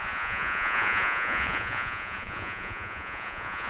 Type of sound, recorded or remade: remade